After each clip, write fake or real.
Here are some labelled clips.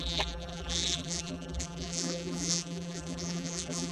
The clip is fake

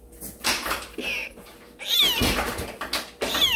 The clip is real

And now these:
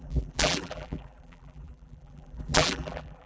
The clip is fake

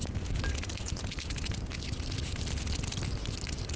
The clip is real